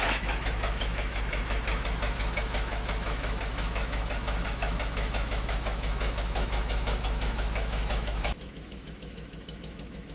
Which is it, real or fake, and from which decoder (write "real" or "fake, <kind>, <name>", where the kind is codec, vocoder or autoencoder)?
fake, autoencoder, DAC-VAE